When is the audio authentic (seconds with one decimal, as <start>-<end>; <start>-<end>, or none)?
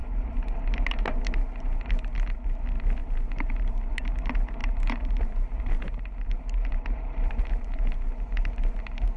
1.2-3.0; 3.9-4.6